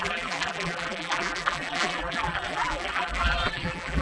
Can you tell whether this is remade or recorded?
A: remade